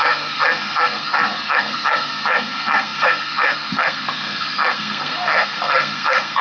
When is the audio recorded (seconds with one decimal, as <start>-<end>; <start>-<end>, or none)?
none